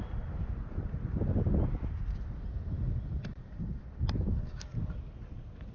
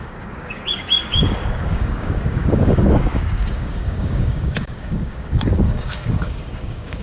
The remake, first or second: second